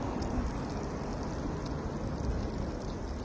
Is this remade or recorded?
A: recorded